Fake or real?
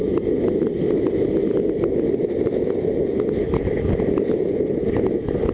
real